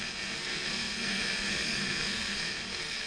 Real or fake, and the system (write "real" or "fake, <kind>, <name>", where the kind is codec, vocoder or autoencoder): fake, codec, SNAC